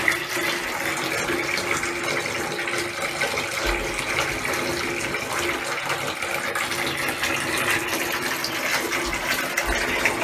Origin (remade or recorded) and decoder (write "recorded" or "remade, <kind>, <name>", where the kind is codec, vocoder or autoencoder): recorded